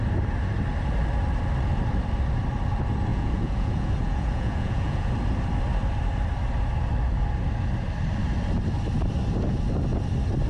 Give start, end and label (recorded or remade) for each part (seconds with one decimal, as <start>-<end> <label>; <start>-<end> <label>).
0.0-3.1 recorded; 3.1-5.1 remade; 5.1-10.5 recorded